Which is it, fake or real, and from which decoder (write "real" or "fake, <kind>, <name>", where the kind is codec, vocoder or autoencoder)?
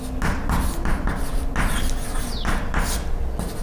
real